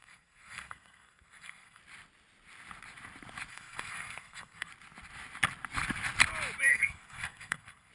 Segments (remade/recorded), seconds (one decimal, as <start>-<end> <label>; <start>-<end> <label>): 0.0-1.8 remade; 1.8-3.5 recorded; 3.5-4.7 remade; 4.7-6.7 recorded; 6.7-7.9 remade